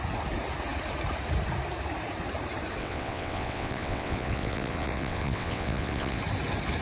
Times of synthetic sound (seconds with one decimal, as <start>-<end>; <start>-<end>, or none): 2.8-6.2

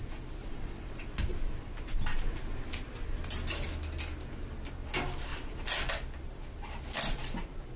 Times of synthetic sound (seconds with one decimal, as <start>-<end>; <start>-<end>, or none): 0.4-1.2

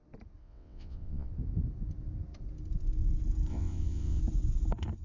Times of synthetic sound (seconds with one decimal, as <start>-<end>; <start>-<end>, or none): 0.4-1.3; 3.5-4.2

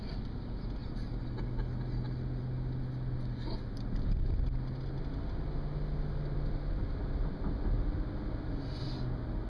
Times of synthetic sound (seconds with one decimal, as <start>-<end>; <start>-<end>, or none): none

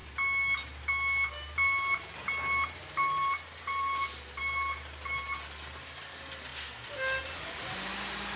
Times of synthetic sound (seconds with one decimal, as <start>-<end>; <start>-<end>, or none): none

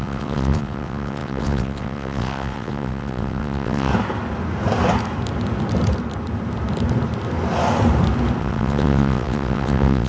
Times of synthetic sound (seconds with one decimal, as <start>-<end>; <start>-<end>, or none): 0.0-3.9; 8.4-10.1

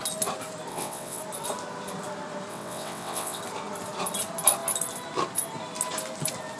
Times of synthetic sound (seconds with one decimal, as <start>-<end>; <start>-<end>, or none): 0.7-1.2; 2.5-3.4